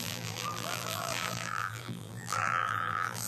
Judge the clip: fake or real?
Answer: fake